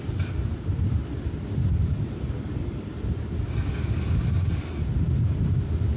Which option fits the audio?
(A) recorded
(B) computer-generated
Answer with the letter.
A